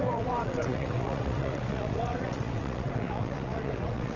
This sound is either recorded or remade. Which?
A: remade